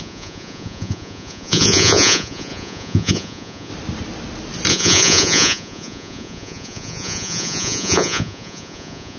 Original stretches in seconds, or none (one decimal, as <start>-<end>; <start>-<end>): 3.7-4.7